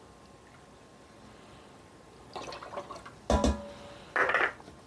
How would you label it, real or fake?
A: real